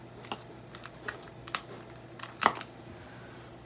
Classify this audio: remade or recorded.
recorded